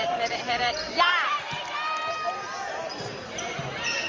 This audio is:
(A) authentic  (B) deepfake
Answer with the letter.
B